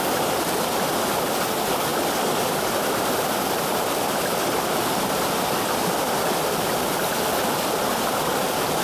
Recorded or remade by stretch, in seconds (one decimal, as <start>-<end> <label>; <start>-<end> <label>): 0.0-8.8 recorded